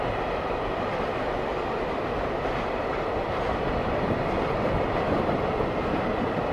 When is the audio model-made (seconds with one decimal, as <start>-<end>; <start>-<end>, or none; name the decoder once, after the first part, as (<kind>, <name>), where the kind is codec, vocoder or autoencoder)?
1.5-5.4 (vocoder, BigVGAN v2)